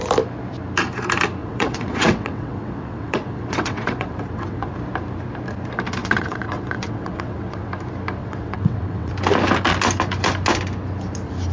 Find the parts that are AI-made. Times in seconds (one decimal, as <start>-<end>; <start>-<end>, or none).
1.4-4.7; 6.0-7.7; 8.2-9.1